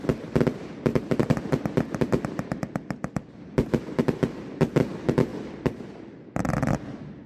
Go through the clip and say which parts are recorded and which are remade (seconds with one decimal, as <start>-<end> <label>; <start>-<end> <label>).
0.0-7.3 recorded